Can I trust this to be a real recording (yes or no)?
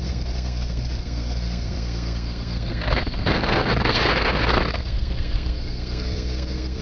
no